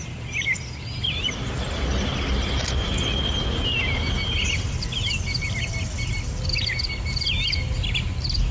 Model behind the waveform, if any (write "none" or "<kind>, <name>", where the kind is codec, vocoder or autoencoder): none